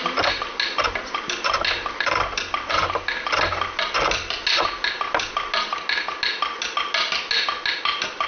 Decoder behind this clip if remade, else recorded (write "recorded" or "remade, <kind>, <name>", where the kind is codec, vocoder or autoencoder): recorded